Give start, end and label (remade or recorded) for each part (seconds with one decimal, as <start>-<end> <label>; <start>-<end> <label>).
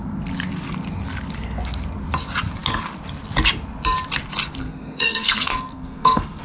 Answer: 0.0-4.6 recorded; 4.6-6.4 remade